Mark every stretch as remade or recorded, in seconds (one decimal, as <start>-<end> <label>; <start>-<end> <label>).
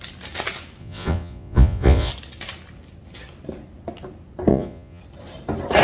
0.0-0.8 recorded; 0.8-2.1 remade; 2.1-4.5 recorded; 4.5-5.0 remade; 5.0-5.8 recorded